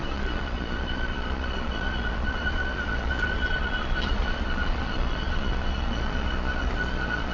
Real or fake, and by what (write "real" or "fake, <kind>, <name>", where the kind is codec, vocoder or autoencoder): fake, vocoder, Vocos